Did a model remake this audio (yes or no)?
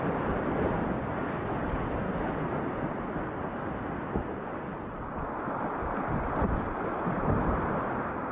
no